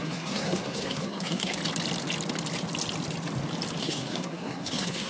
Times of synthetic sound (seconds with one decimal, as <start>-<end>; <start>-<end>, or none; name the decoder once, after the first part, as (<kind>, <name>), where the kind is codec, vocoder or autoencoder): 0.0-1.6 (codec, SNAC); 3.8-5.1